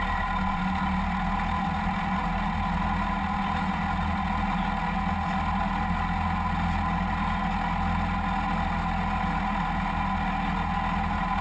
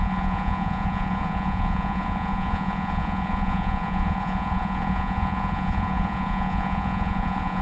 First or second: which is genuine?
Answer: first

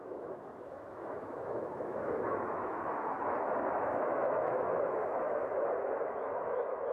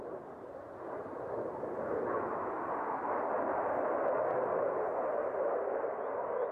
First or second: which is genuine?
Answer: second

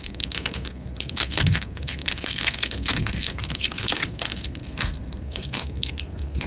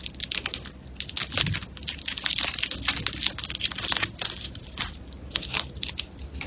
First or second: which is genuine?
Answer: second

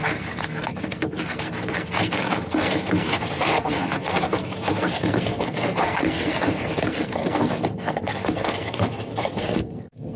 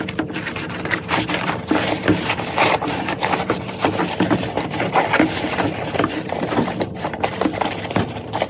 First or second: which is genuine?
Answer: second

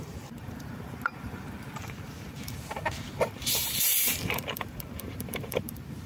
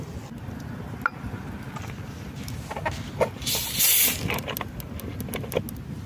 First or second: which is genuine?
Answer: second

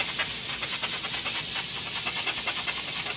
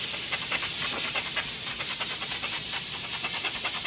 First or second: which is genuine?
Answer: first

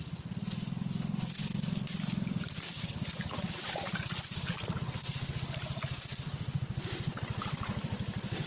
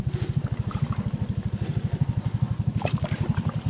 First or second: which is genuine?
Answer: second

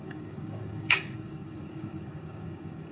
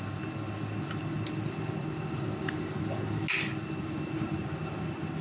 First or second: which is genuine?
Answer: second